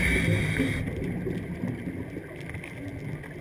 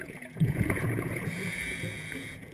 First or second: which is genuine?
first